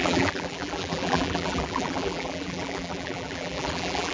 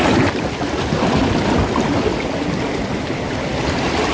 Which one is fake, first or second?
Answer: first